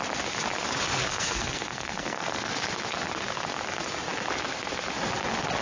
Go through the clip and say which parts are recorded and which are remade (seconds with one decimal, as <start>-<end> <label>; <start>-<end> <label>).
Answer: 0.0-1.1 recorded; 1.1-2.5 remade; 2.5-5.6 recorded